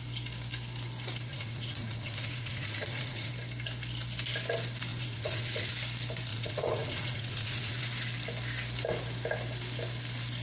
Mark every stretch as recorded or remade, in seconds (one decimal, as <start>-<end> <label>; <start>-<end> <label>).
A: 0.0-1.3 recorded; 1.3-3.3 remade; 3.3-4.9 recorded; 4.9-5.7 remade; 5.7-6.3 recorded; 6.3-7.8 remade; 7.8-10.4 recorded